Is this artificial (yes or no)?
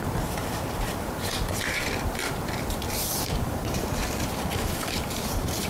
yes